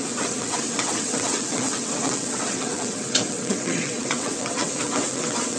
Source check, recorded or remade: remade